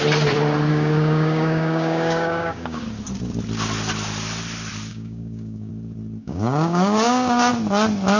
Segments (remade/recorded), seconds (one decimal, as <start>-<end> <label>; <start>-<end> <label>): 0.0-0.7 recorded; 0.7-2.8 remade; 2.8-4.9 recorded; 4.9-5.7 remade; 5.7-6.2 recorded; 6.2-7.5 remade; 7.5-8.2 recorded